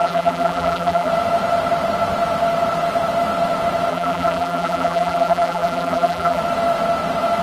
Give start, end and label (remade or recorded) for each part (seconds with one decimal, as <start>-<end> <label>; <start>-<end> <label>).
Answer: 0.0-1.1 remade; 1.1-3.9 recorded; 3.9-6.4 remade; 6.4-7.4 recorded